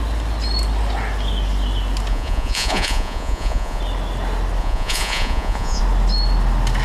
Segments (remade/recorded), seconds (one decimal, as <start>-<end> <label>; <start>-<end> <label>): 0.0-2.1 recorded; 2.1-3.8 remade; 3.8-4.6 recorded; 4.6-5.8 remade; 5.8-6.8 recorded